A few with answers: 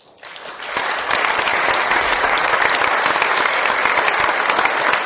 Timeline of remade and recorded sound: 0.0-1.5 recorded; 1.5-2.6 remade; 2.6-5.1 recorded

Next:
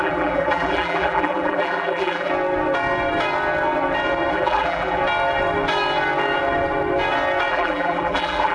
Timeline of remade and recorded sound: 0.0-2.3 remade; 2.3-4.3 recorded; 4.3-5.0 remade; 5.0-7.5 recorded; 7.5-8.5 remade

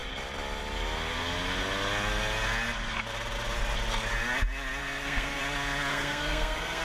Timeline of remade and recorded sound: 0.0-4.8 recorded; 4.8-5.4 remade; 5.4-5.9 recorded; 5.9-6.8 remade

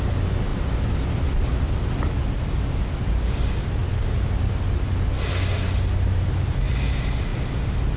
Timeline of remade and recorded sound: 0.0-8.0 recorded

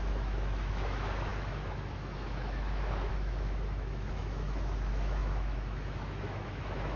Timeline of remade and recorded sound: 0.0-7.0 remade

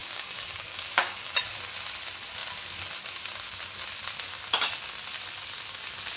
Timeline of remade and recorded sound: 0.0-1.4 remade; 1.4-6.2 recorded

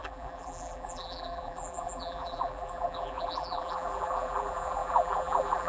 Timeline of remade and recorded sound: 0.0-5.7 remade

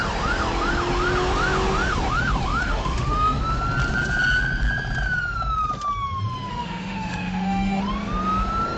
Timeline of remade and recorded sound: 0.0-2.5 recorded; 2.5-3.4 remade; 3.4-6.5 recorded; 6.5-7.8 remade; 7.8-8.8 recorded